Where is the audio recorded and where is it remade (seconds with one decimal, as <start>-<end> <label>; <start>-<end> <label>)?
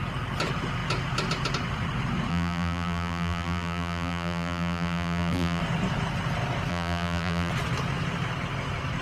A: 0.0-2.3 recorded; 2.3-5.6 remade; 5.6-6.7 recorded; 6.7-7.5 remade; 7.5-9.0 recorded